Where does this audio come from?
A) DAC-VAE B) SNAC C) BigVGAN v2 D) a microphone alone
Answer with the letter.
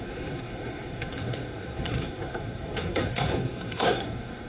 B